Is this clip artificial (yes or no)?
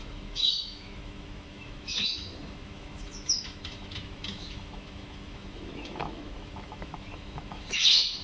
yes